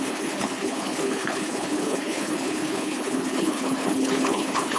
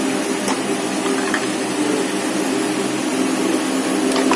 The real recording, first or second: second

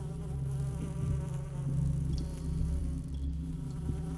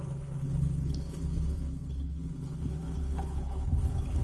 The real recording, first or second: first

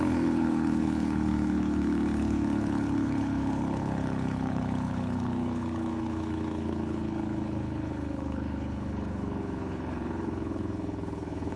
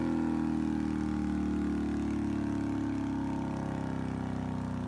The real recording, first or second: second